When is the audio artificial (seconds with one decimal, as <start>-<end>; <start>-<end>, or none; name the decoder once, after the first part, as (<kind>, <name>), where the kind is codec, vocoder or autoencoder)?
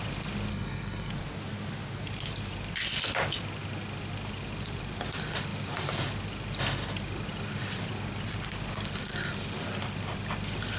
0.5-1.1 (codec, SNAC)